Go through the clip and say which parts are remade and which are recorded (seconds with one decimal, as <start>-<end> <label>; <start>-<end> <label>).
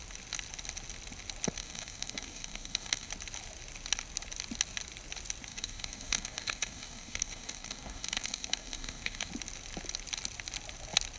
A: 0.0-1.6 recorded; 1.6-3.1 remade; 3.1-5.5 recorded; 5.5-9.3 remade; 9.3-11.2 recorded